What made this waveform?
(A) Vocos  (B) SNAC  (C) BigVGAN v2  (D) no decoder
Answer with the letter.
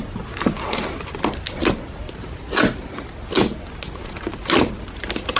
D